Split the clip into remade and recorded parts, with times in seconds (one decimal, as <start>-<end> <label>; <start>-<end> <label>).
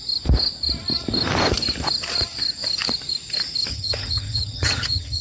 0.0-3.7 recorded; 3.7-5.2 remade